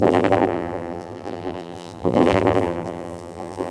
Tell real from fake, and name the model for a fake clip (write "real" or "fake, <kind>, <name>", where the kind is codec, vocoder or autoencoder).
fake, vocoder, BigVGAN v2